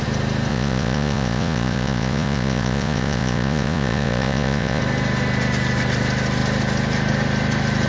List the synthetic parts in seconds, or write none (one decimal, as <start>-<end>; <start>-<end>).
0.5-4.8